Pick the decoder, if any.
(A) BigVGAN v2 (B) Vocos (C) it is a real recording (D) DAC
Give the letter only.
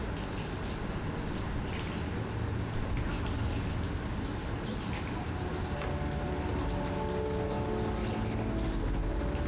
C